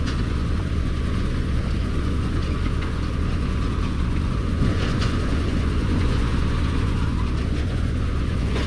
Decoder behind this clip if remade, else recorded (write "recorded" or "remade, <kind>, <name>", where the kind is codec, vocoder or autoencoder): remade, vocoder, Vocos